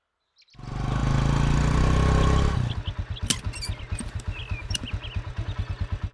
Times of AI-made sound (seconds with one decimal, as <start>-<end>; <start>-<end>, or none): none